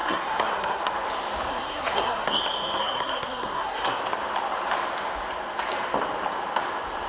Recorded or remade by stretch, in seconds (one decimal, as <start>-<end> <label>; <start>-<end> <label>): 0.0-0.8 remade; 0.8-1.5 recorded; 1.5-2.4 remade; 2.4-2.8 recorded; 2.8-4.0 remade; 4.0-7.1 recorded